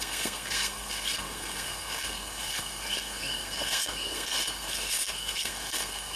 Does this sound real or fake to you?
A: fake